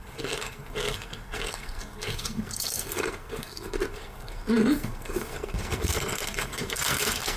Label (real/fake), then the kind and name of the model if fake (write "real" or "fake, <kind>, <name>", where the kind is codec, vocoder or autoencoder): fake, codec, SNAC